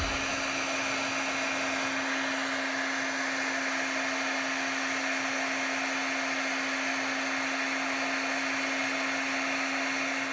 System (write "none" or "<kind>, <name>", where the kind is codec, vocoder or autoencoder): none